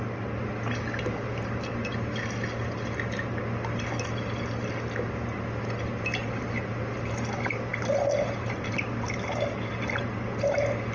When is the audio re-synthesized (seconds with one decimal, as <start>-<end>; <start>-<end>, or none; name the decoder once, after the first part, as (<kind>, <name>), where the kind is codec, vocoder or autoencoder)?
none